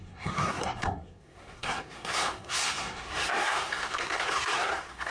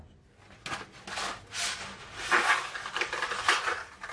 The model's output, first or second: first